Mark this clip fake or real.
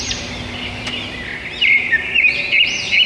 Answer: real